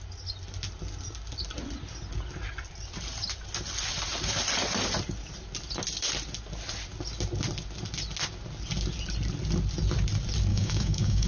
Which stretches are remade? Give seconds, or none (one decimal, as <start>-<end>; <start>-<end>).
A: 10.5-11.3